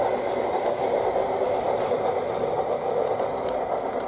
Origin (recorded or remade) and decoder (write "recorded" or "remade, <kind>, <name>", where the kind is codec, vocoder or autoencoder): recorded